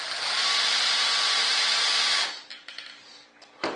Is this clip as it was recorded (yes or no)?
yes